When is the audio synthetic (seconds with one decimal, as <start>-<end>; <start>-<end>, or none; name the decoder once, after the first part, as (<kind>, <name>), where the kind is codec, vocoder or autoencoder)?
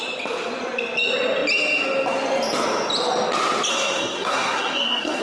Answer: 3.7-5.2 (codec, SNAC)